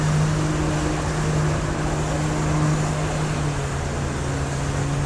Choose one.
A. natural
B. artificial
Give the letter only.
A